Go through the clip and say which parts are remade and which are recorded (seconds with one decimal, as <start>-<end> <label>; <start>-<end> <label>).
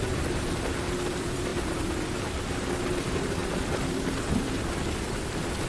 0.0-5.7 remade